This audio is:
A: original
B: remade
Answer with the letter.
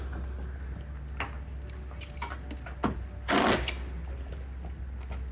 A